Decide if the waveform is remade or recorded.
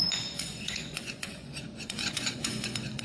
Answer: remade